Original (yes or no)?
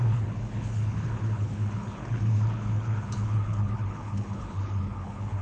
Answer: no